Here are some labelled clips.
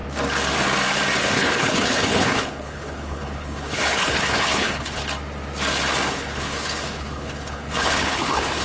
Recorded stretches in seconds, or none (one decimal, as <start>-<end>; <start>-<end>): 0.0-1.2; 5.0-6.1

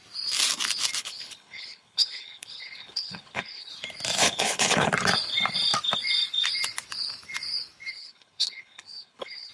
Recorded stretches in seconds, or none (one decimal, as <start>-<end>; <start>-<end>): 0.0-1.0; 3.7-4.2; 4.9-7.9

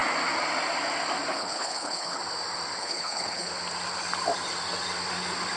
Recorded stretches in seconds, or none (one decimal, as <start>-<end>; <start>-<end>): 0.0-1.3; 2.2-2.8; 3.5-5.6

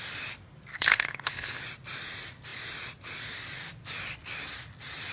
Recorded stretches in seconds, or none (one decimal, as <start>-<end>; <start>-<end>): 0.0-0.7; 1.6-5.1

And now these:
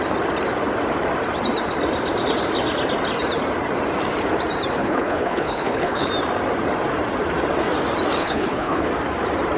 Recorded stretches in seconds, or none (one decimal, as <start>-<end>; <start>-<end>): 0.0-4.8; 6.1-8.2; 8.9-9.6